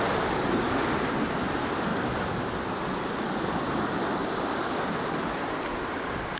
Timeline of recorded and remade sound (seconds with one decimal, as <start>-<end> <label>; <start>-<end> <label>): 0.0-6.4 recorded